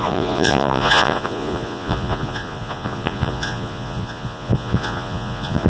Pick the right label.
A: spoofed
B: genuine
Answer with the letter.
A